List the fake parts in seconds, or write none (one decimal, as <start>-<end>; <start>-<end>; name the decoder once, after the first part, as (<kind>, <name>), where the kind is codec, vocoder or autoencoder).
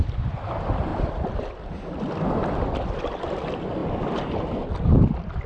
none